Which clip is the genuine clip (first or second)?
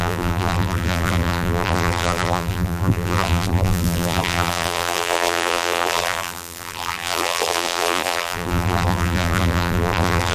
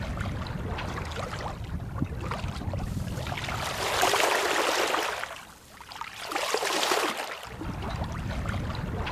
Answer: second